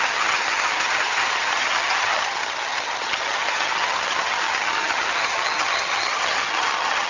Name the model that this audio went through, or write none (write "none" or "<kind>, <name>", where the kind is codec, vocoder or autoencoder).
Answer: vocoder, HiFi-GAN